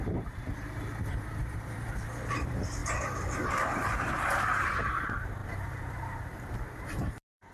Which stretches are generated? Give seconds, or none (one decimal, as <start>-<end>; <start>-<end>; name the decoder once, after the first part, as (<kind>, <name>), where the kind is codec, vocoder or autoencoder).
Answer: 0.0-7.5 (vocoder, BigVGAN v2)